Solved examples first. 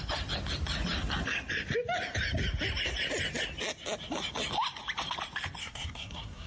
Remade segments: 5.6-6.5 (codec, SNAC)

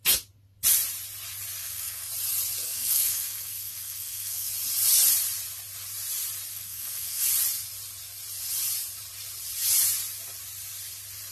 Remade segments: 1.6-2.1 (codec, SNAC); 2.6-4.5; 6.5-7.3

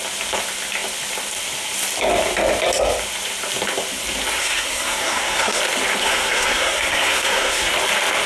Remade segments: 4.4-5.6 (codec, SNAC); 6.0-7.7

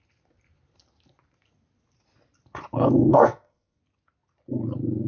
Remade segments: 3.1-3.8 (codec, SNAC)

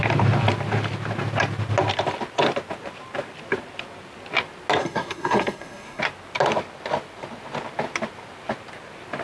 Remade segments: 4.8-6.0 (codec, SNAC)